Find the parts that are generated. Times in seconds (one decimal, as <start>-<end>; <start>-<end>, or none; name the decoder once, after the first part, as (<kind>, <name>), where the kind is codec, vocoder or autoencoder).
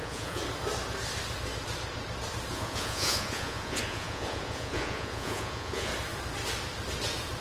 0.0-0.4 (vocoder, Vocos); 2.5-5.9